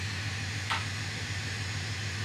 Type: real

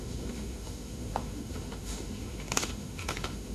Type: fake